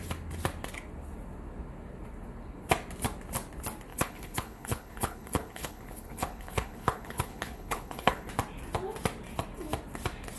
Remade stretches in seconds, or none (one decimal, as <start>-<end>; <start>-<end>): 3.9-8.3